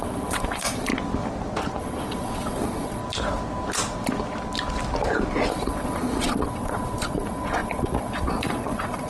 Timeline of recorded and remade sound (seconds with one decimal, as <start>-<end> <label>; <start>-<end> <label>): 0.0-0.9 remade; 0.9-1.8 recorded; 1.8-3.0 remade; 3.0-5.5 recorded; 5.5-9.1 remade